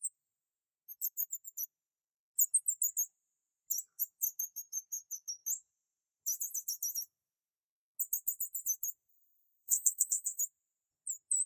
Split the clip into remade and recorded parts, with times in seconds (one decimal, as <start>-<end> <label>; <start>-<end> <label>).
0.0-9.1 recorded; 9.1-10.4 remade; 10.4-11.5 recorded